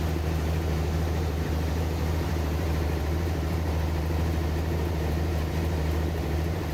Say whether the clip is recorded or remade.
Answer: remade